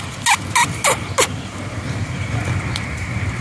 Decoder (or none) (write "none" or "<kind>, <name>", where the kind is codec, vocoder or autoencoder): none